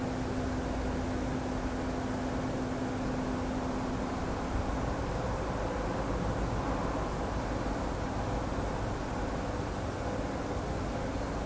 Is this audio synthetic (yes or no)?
no